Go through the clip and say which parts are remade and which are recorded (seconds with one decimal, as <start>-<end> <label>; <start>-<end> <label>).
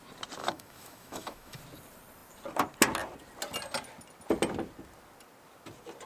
0.0-0.4 recorded; 0.4-1.6 remade; 1.6-6.1 recorded